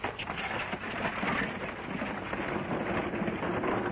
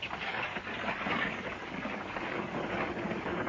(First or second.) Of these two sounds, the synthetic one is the second